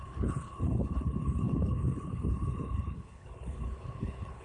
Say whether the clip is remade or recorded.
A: remade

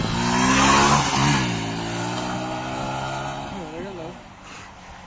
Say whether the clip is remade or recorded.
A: recorded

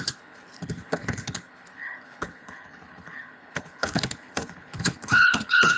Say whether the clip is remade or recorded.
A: remade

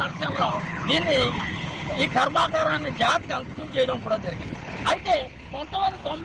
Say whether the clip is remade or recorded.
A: remade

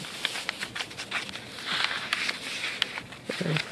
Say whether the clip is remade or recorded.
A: recorded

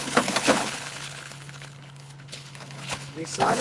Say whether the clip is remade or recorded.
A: remade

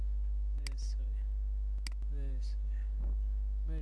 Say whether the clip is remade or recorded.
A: recorded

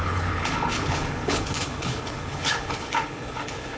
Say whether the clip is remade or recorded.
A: remade